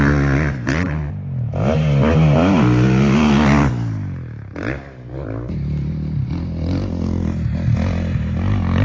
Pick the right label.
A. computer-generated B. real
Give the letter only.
B